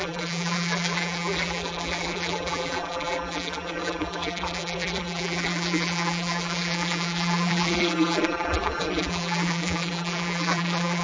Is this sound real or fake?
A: fake